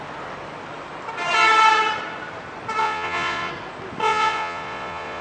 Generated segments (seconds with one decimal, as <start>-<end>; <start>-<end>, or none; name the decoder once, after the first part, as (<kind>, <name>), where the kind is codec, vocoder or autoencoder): 2.8-3.5 (vocoder, Vocos); 4.0-5.2